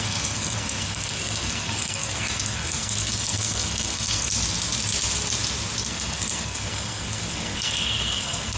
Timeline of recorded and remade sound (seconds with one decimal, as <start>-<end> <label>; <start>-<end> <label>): 0.0-4.3 remade; 4.3-5.8 recorded; 5.8-8.6 remade